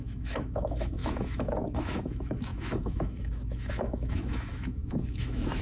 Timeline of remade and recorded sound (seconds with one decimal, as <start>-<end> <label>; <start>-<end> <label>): 0.0-5.6 remade